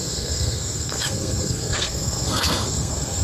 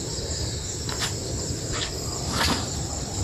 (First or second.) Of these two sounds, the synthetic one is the first